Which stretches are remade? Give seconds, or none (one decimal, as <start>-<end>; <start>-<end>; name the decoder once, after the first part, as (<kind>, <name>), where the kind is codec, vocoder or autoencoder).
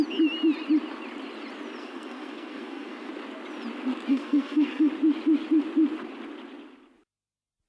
1.8-3.1 (codec, SNAC); 4.1-4.9